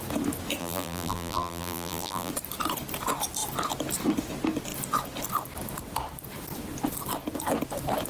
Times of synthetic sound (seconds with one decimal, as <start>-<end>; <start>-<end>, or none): 0.6-2.3